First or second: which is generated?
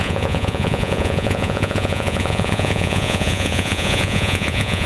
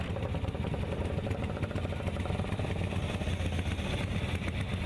first